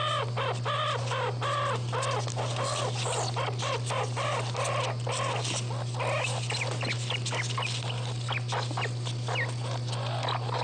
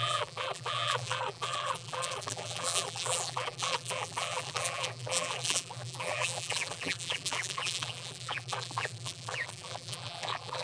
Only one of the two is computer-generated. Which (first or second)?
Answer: second